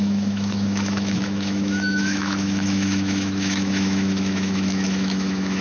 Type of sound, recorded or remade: remade